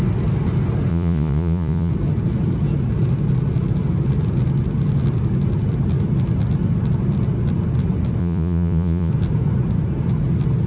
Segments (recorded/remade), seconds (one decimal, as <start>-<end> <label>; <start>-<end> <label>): 0.0-0.9 recorded; 0.9-1.9 remade; 1.9-8.2 recorded; 8.2-9.1 remade; 9.1-10.7 recorded